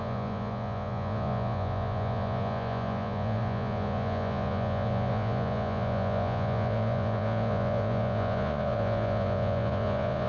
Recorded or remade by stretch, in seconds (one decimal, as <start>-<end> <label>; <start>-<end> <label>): 0.0-10.3 remade

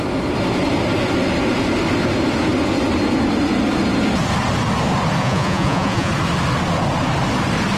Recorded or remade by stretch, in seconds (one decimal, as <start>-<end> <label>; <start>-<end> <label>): 0.0-5.2 recorded; 5.2-6.1 remade; 6.1-7.8 recorded